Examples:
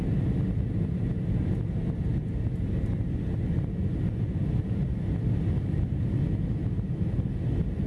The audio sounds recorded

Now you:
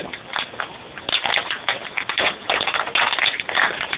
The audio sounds recorded